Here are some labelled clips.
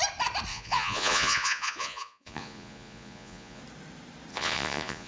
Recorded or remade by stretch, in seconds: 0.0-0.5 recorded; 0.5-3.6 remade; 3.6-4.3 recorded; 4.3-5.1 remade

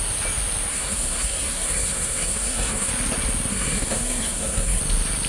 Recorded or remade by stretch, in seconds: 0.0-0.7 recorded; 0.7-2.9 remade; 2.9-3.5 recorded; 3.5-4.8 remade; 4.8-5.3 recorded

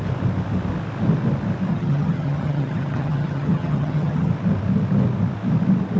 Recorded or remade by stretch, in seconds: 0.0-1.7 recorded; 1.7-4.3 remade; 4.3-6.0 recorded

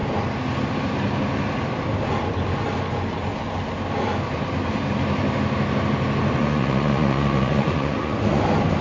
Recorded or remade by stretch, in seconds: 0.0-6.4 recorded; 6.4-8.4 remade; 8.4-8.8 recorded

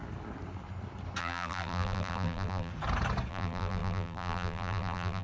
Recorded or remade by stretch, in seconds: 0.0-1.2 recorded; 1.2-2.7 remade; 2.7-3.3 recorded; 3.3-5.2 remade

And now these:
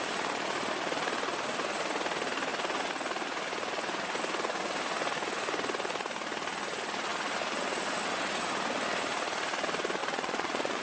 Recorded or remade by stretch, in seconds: 0.0-10.0 recorded; 10.0-10.8 remade